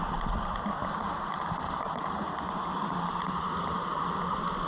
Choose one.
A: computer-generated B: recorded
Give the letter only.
B